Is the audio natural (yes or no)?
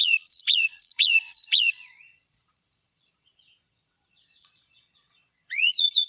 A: no